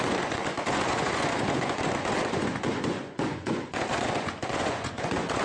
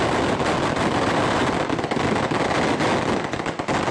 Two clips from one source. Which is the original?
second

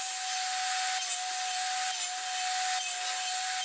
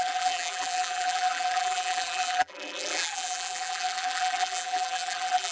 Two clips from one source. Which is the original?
first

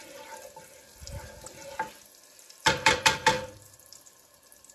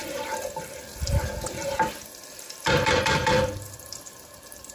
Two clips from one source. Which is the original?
first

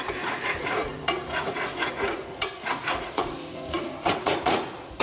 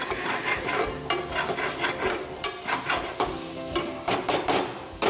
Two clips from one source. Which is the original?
second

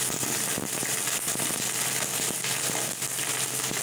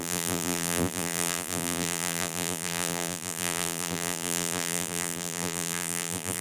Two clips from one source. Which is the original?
first